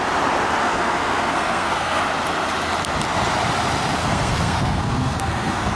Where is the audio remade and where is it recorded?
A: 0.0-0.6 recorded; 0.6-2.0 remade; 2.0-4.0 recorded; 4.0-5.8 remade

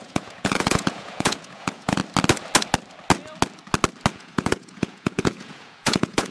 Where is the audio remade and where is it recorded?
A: 0.0-2.0 remade; 2.0-4.1 recorded; 4.1-6.3 remade

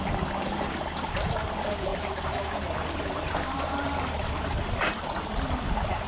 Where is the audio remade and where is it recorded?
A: 0.0-1.9 recorded; 1.9-4.6 remade; 4.6-6.1 recorded

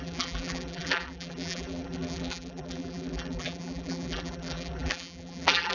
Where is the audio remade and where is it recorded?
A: 0.0-5.7 remade

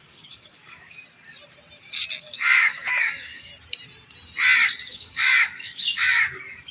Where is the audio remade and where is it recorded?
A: 0.0-1.0 remade; 1.0-2.2 recorded; 2.2-3.5 remade; 3.5-4.9 recorded; 4.9-6.7 remade

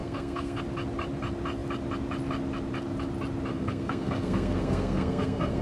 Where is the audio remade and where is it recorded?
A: 0.0-0.6 remade; 0.6-3.5 recorded; 3.5-5.6 remade